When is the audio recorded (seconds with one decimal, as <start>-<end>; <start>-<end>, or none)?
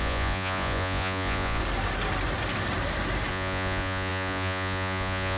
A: 1.6-3.3